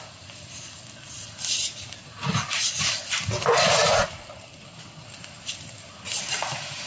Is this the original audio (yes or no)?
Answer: yes